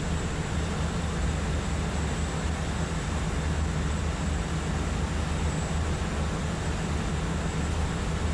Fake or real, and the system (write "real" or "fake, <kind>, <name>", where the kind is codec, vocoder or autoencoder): real